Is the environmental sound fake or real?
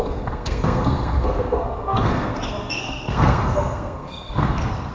fake